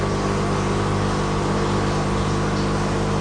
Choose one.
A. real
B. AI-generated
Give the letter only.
A